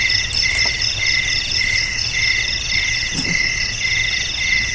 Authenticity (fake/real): real